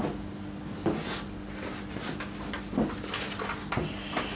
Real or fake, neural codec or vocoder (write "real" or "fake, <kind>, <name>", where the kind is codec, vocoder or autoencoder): real